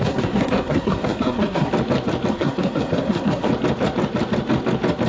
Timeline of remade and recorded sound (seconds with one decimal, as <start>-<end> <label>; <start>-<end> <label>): 0.0-1.7 remade; 1.7-2.3 recorded; 2.3-3.5 remade; 3.5-5.1 recorded